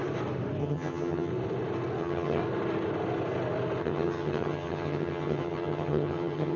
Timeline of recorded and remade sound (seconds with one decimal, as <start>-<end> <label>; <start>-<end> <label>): 0.0-0.6 recorded; 0.6-1.3 remade; 1.3-2.0 recorded; 2.0-2.4 remade; 2.4-3.8 recorded; 3.8-6.6 remade